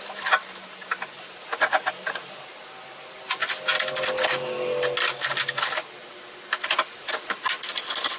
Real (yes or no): yes